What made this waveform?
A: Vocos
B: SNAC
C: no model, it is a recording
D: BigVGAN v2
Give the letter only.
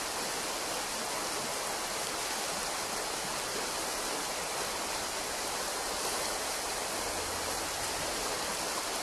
C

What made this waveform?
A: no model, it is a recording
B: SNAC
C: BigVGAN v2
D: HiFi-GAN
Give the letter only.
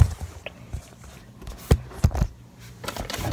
A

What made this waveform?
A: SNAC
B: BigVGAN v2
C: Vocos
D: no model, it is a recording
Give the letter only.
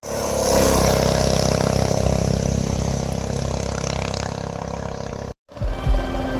D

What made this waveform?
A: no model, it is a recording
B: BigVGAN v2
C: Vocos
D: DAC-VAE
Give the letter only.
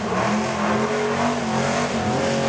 A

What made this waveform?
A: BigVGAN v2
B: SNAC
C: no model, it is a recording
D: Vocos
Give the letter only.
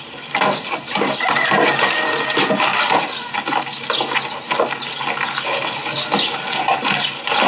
C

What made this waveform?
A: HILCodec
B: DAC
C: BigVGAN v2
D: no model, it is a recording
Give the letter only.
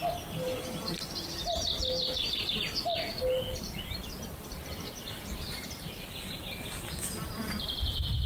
D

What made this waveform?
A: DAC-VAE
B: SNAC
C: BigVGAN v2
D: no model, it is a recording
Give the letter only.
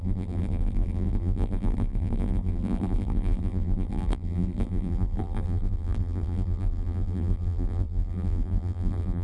C